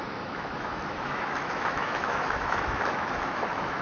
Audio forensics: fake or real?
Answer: fake